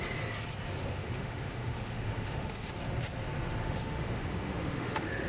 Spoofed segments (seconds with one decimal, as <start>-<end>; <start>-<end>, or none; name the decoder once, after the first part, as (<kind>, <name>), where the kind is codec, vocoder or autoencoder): 0.8-2.7 (autoencoder, DAC-VAE); 3.6-5.3